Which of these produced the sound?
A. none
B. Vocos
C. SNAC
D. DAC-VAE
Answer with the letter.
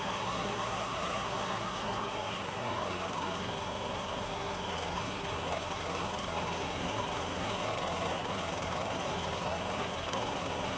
C